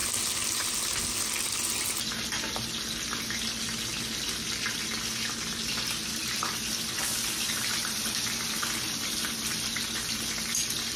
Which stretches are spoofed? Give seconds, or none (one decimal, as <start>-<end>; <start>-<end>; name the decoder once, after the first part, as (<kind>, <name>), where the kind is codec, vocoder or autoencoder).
none